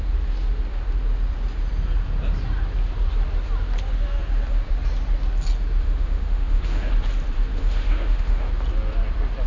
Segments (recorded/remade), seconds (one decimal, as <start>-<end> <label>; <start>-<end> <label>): 0.0-5.8 recorded; 5.8-6.9 remade; 6.9-7.5 recorded; 7.5-8.5 remade; 8.5-9.5 recorded

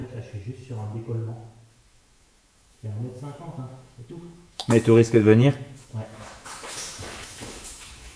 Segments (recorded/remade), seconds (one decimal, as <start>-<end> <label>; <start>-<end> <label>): 0.0-1.7 recorded; 1.7-8.2 remade

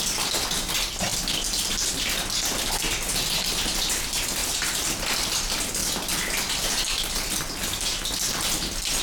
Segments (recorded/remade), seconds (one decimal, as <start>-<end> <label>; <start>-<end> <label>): 0.0-9.0 recorded

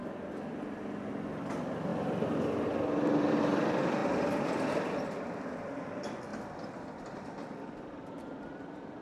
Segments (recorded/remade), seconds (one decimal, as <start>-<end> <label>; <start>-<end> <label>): 0.0-9.0 recorded

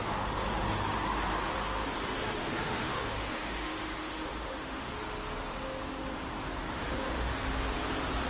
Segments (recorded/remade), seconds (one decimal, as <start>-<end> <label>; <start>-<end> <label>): 0.0-2.4 recorded; 2.4-4.9 remade; 4.9-6.8 recorded; 6.8-7.3 remade; 7.3-8.3 recorded